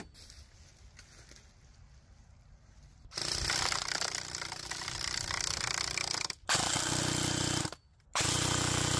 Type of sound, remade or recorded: recorded